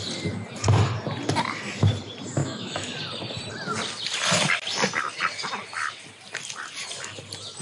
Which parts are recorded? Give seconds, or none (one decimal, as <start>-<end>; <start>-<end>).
0.0-2.4; 2.9-7.6